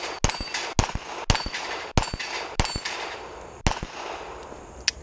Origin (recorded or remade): recorded